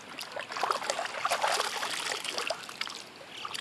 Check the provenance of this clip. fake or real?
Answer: real